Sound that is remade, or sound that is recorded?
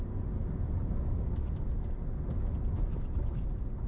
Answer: recorded